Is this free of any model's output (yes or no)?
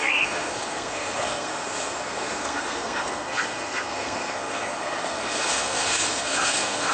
no